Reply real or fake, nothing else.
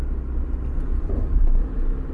real